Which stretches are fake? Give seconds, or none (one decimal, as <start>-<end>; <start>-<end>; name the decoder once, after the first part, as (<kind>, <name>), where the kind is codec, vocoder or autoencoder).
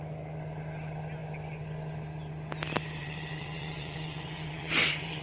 3.0-5.2 (vocoder, WaveNeXt)